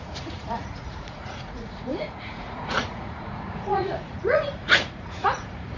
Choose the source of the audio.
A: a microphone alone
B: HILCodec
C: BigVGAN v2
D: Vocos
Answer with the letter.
D